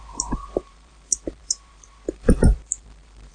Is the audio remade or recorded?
remade